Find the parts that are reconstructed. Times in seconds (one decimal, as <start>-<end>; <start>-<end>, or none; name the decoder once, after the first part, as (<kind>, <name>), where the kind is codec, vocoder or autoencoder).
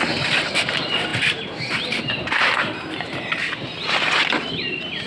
none